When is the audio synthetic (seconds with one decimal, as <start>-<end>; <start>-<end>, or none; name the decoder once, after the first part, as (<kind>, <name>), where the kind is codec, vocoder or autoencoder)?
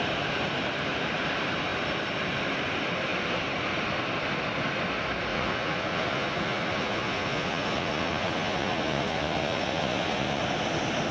5.3-10.4 (vocoder, Vocos)